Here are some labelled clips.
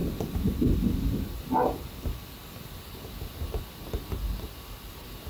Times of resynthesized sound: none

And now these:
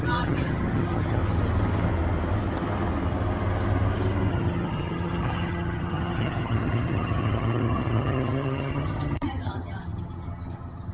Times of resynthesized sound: 0.0-1.2; 4.3-10.9

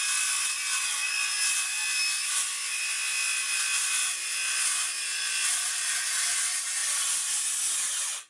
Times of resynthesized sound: none